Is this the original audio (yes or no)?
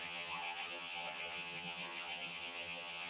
no